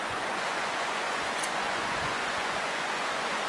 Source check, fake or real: fake